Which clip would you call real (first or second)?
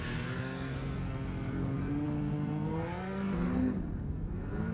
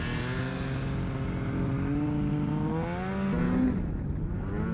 second